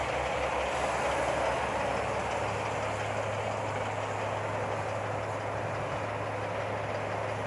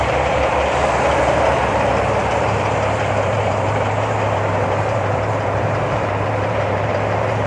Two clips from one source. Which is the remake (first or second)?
second